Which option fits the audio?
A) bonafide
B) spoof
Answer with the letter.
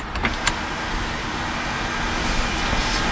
A